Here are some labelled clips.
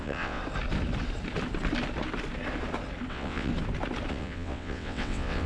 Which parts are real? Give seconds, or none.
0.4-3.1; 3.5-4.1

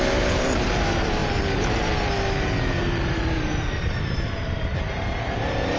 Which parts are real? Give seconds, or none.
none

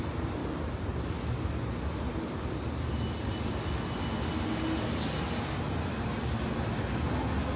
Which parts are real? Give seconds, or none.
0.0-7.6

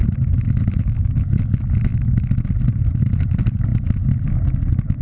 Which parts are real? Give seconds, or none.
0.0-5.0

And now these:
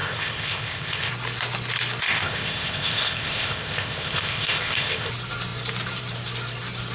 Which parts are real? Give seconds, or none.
1.1-2.0; 5.1-6.9

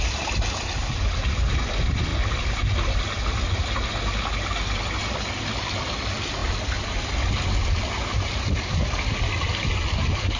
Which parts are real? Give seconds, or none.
0.0-10.4